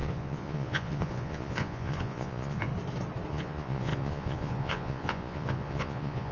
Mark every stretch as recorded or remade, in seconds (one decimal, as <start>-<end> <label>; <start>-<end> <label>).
0.0-2.7 remade; 2.7-3.3 recorded; 3.3-6.3 remade